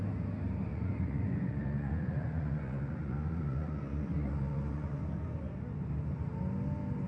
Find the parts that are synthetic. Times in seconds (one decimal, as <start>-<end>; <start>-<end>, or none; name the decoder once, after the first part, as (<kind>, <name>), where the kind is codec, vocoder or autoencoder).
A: 0.7-5.0 (vocoder, Vocos)